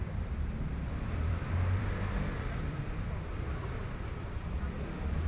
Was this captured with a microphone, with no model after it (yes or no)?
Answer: no